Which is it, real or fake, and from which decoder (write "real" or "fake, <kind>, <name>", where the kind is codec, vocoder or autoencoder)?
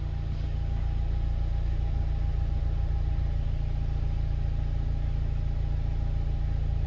real